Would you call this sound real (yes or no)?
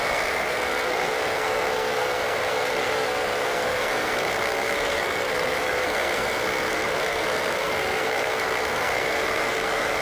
no